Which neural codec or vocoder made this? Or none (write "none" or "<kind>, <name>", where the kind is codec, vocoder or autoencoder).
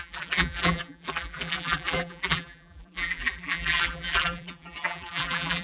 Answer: vocoder, BigVGAN v2